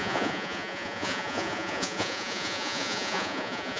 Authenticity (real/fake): fake